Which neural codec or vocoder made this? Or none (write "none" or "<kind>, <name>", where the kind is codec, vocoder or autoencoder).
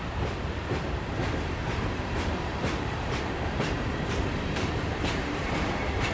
vocoder, BigVGAN v2